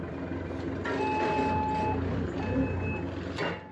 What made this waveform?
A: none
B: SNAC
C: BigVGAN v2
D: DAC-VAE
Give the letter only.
A